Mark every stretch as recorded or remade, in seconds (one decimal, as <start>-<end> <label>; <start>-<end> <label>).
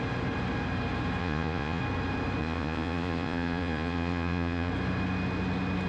0.0-1.2 recorded; 1.2-1.8 remade; 1.8-2.4 recorded; 2.4-4.7 remade; 4.7-5.9 recorded